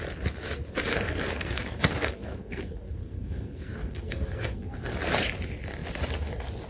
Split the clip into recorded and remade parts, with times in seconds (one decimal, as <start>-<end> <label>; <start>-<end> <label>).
0.0-0.9 recorded; 0.9-4.9 remade; 4.9-6.7 recorded